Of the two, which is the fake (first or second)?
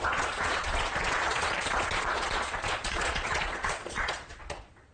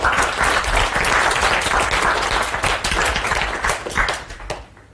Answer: first